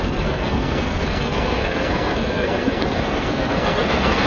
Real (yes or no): no